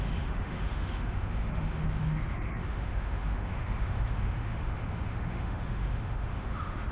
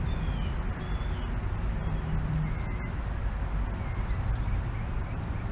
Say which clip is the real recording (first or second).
second